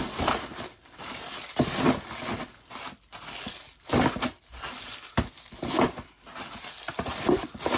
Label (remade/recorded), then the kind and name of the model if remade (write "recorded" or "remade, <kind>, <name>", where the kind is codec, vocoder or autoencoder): recorded